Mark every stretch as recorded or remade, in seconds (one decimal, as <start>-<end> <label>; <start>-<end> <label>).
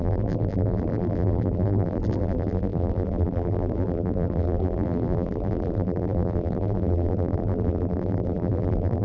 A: 0.0-9.0 remade